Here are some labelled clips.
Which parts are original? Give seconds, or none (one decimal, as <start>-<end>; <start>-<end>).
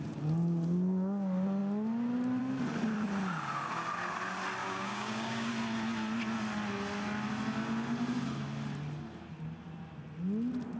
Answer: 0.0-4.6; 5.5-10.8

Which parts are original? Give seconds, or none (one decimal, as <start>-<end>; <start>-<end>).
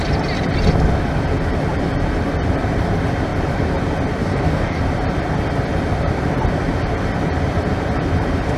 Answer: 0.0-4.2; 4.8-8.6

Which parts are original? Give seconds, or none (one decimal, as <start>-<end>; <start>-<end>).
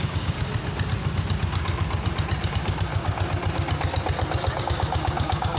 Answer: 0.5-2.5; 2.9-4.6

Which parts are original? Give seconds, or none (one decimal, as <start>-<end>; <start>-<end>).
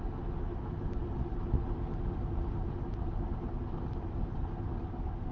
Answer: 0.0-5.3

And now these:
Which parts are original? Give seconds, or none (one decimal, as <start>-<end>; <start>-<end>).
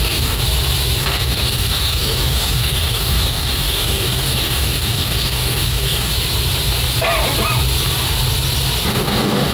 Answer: 0.4-1.0; 6.1-8.9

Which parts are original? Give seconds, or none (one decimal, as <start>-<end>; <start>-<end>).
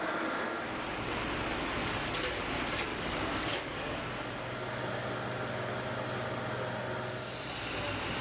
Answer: 0.0-1.8; 2.4-2.9; 4.0-8.2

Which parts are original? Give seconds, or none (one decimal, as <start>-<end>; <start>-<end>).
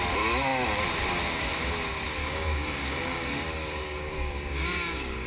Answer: 0.0-2.2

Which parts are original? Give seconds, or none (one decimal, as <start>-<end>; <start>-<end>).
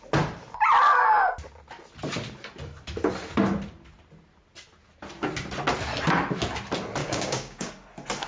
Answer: 0.0-7.0; 7.7-8.3